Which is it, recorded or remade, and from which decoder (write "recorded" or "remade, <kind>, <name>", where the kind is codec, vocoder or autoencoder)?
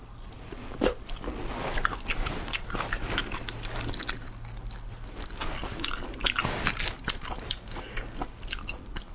recorded